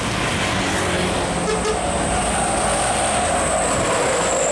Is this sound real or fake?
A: real